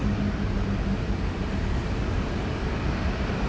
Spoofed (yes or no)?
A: no